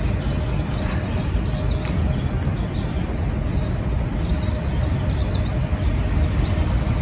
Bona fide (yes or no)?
yes